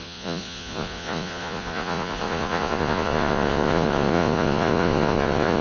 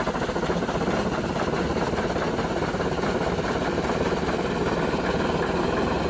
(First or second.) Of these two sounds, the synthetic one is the first